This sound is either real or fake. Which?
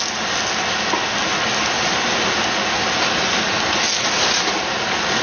real